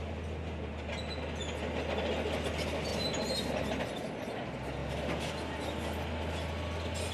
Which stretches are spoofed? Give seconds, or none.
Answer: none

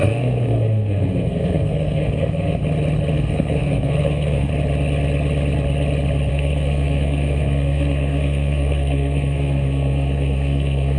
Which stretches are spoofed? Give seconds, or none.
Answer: 0.0-2.6 (codec, SNAC); 3.1-4.5; 6.3-11.0